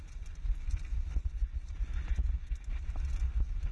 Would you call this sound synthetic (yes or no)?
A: no